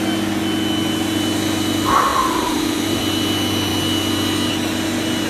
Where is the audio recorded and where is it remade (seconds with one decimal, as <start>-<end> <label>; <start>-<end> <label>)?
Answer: 0.0-2.1 recorded; 2.1-3.0 remade; 3.0-5.3 recorded